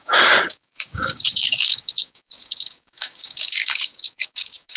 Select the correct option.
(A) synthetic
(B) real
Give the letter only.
A